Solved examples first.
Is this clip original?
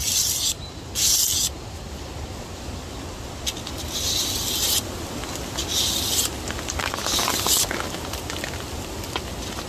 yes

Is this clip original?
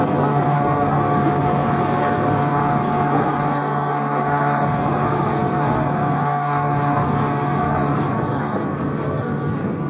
no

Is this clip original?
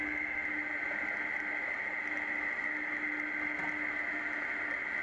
yes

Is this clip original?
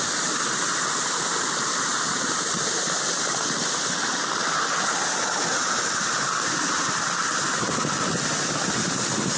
yes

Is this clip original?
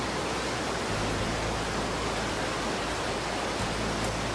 yes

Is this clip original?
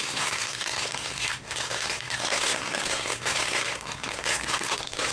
no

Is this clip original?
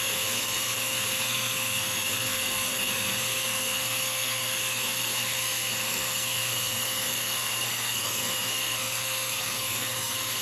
no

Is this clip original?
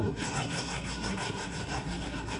no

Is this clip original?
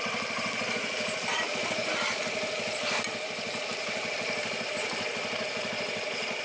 yes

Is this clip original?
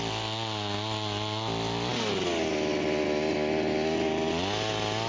yes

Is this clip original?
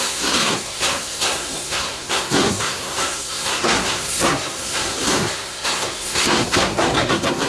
no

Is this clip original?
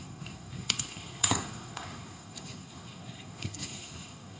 no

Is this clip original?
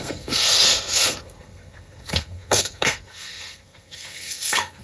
no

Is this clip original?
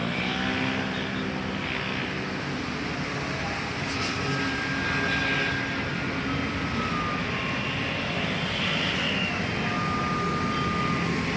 yes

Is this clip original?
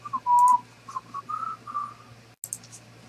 yes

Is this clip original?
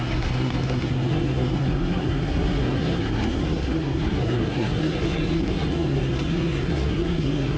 no